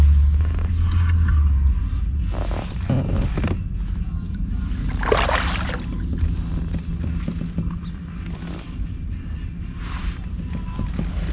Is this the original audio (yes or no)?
yes